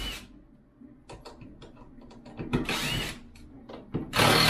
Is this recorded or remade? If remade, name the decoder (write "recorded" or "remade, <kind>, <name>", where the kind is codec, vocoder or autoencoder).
recorded